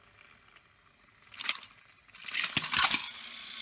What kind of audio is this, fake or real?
real